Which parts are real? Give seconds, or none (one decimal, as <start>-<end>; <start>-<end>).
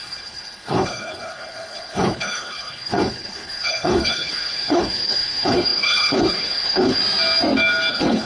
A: 7.0-7.9